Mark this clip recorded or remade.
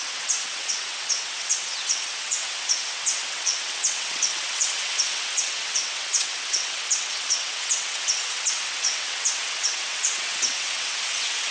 remade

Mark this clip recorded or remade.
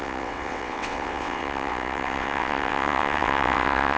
remade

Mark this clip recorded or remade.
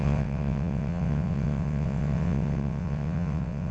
remade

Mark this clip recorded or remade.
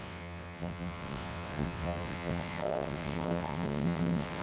remade